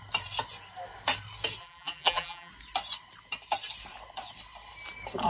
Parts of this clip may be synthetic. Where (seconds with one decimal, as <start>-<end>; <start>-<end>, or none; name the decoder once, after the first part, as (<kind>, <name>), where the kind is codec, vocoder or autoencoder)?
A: 1.6-2.5 (vocoder, BigVGAN v2)